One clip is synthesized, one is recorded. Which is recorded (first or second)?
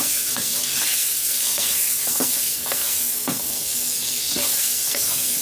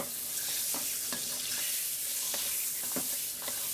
second